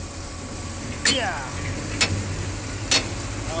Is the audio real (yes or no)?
yes